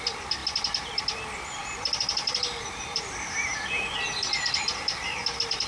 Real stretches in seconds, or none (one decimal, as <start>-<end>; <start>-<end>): 0.0-5.7